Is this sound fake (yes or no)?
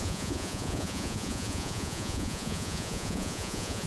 yes